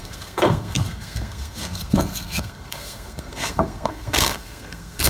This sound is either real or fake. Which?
fake